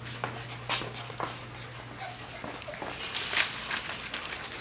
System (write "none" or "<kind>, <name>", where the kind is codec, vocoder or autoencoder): none